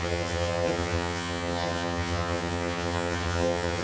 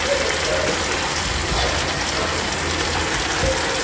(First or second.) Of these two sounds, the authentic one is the second